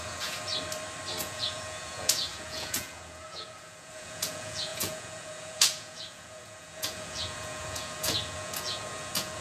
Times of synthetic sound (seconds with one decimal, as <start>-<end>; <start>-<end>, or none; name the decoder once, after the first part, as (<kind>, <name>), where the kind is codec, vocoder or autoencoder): 0.0-0.5 (vocoder, Vocos); 1.2-9.4